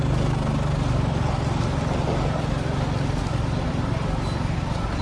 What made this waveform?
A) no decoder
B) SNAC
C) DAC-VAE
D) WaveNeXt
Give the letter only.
A